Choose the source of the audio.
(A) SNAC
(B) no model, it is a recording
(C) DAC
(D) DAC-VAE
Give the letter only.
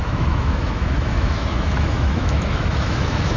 D